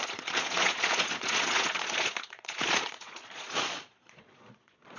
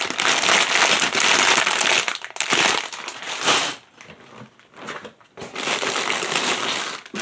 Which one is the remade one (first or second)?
first